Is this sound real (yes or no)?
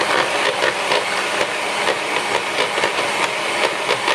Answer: yes